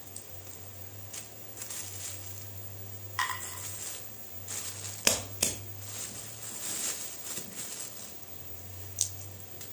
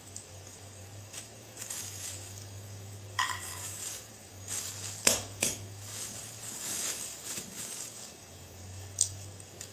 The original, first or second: first